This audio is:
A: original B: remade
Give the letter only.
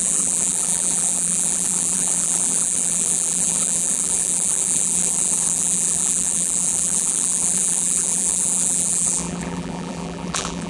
B